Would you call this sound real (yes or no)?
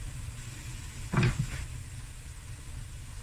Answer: yes